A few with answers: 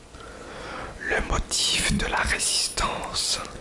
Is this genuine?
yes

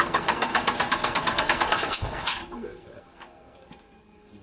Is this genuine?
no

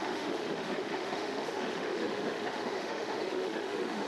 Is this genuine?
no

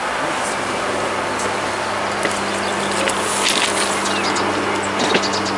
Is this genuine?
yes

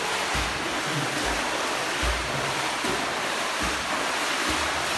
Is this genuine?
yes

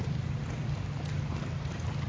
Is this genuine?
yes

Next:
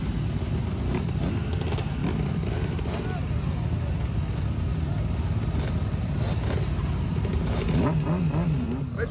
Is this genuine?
yes